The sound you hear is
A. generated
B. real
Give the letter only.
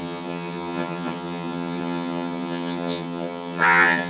A